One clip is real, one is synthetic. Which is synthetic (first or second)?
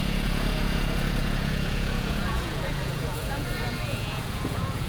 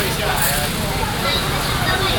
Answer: first